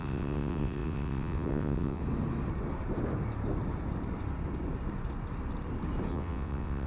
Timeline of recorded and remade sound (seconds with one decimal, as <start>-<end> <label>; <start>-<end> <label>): 0.0-2.0 remade; 2.0-6.1 recorded; 6.1-6.9 remade